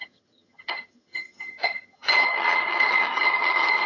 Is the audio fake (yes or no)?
yes